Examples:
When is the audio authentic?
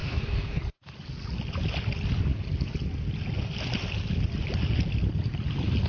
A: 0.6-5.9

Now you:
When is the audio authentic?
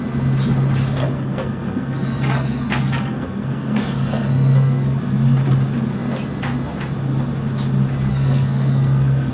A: 0.0-1.0; 5.0-8.1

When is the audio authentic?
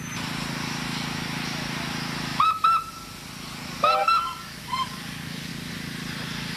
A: 0.0-4.0; 5.5-6.6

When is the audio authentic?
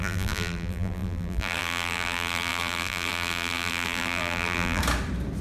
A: 4.8-5.4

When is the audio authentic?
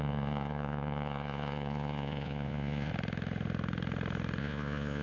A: 2.9-4.4